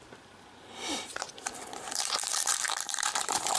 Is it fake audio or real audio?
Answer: fake